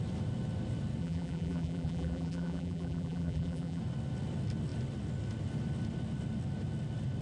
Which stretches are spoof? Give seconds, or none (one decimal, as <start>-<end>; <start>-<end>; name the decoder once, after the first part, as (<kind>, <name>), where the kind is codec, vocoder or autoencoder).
1.0-3.8 (vocoder, BigVGAN v2)